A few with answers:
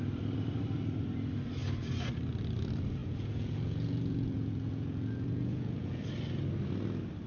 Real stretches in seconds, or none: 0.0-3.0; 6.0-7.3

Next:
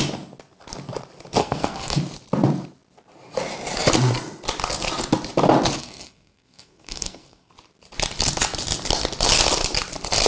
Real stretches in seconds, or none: 0.0-1.4; 2.0-5.8; 7.5-10.3

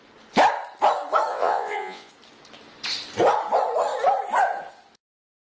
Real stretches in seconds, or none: 0.0-1.3; 2.1-5.5

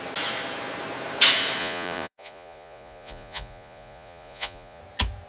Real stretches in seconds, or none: 0.0-1.6; 4.8-5.3

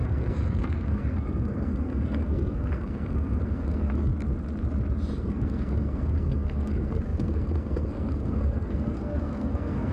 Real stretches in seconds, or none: 4.1-5.2

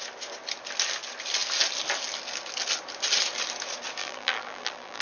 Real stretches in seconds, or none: 0.0-4.0